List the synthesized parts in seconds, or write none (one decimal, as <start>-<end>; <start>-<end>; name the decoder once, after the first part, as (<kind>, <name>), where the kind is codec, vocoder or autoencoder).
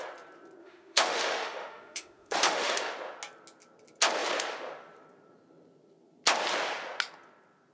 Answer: 0.6-2.9 (autoencoder, DAC-VAE)